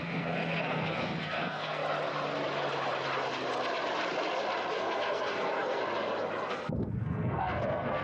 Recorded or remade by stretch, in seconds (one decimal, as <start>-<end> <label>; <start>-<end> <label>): 0.0-1.8 remade; 1.8-4.7 recorded; 4.7-5.8 remade; 5.8-6.5 recorded; 6.5-8.0 remade